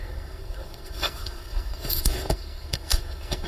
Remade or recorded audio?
remade